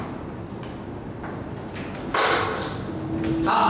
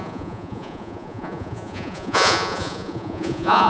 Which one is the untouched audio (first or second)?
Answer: first